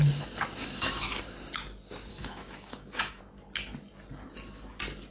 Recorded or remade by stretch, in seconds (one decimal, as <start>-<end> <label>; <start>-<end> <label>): 0.0-0.6 recorded; 0.6-1.2 remade; 1.2-2.1 recorded; 2.1-3.2 remade; 3.2-5.1 recorded